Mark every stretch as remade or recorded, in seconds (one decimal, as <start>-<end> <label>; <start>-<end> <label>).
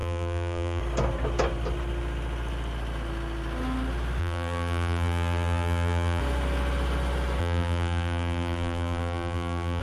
0.0-0.8 remade; 0.8-4.2 recorded; 4.2-6.2 remade; 6.2-7.4 recorded; 7.4-9.8 remade